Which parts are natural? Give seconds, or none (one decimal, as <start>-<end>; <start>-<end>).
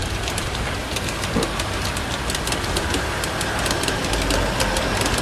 0.8-2.6; 4.0-4.7